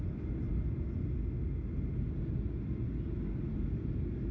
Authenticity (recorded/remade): recorded